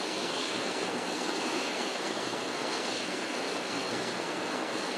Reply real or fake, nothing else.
fake